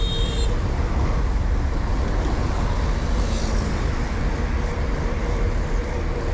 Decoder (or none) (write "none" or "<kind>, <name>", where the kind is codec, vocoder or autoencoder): none